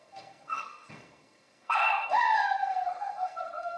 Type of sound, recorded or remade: remade